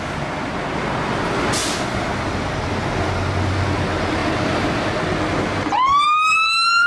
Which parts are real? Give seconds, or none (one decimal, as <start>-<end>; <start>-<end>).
0.0-6.9